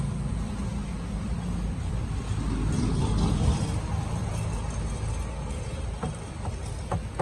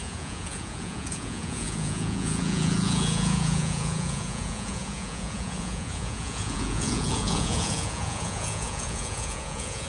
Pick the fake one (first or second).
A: second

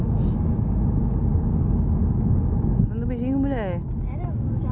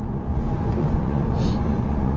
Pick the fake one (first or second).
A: second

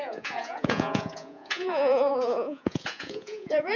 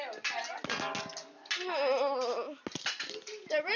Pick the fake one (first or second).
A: first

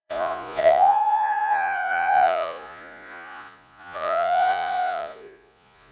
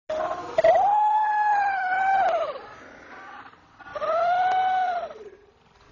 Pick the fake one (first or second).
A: first